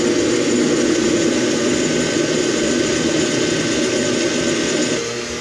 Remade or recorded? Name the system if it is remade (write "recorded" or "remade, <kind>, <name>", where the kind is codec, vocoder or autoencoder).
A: recorded